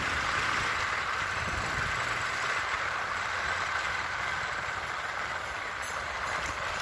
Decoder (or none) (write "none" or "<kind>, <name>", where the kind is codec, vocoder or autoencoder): none